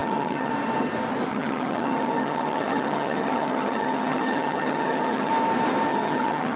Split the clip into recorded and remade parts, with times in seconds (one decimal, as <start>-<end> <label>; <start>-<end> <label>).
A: 0.0-0.5 remade; 0.5-1.3 recorded; 1.3-5.3 remade; 5.3-5.9 recorded; 5.9-6.6 remade